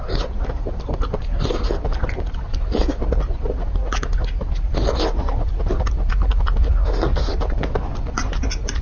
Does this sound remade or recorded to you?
recorded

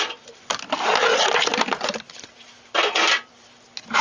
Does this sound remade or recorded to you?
recorded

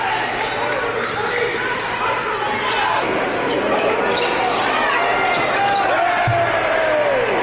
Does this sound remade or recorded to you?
recorded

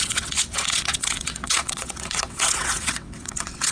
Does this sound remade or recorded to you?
remade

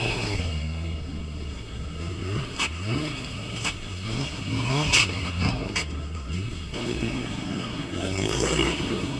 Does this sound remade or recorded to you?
remade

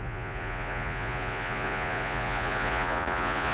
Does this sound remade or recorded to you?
remade